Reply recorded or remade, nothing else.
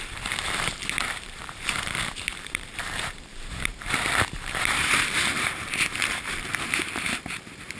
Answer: remade